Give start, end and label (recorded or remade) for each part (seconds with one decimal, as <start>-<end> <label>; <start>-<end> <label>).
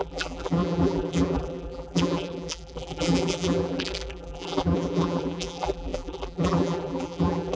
0.0-7.6 remade